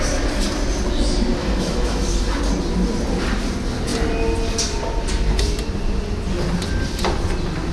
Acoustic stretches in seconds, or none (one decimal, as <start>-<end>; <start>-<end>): 0.0-1.4; 2.4-7.7